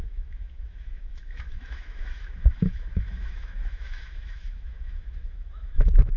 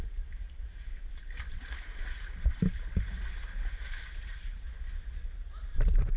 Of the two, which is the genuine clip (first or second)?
second